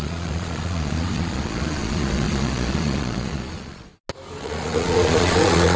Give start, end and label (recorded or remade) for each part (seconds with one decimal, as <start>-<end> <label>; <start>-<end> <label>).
0.0-3.9 remade; 3.9-4.4 recorded; 4.4-5.8 remade